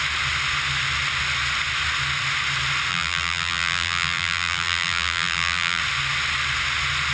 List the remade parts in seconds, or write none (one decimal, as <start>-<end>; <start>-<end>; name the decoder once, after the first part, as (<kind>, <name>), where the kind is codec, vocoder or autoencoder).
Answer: 2.9-5.8 (vocoder, BigVGAN v2)